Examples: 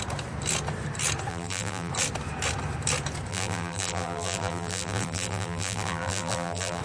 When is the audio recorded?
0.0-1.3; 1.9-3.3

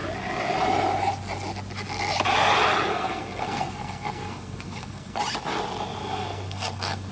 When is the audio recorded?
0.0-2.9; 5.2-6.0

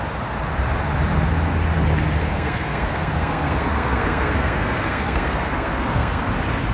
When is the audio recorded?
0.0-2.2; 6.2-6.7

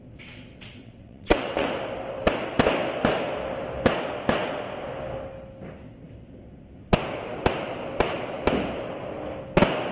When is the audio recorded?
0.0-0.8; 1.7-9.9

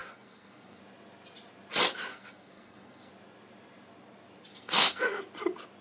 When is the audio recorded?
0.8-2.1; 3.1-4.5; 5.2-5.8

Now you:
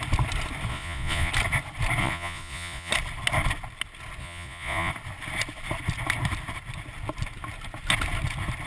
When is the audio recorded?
0.0-0.7; 1.3-2.0; 2.9-4.2; 4.9-8.7

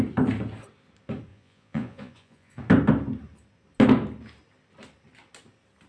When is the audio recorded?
0.0-1.3; 2.6-5.9

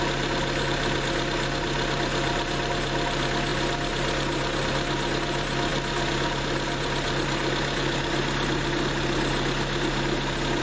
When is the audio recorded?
0.0-10.6